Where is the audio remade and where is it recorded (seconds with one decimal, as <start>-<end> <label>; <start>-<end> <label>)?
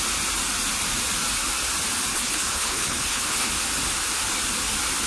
0.0-2.1 recorded; 2.1-3.5 remade; 3.5-5.1 recorded